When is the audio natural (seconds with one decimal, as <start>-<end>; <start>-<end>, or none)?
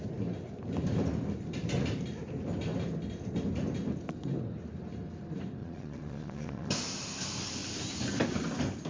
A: 0.0-5.6; 6.7-8.9